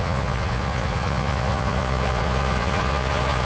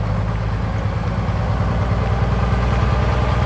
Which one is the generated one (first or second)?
first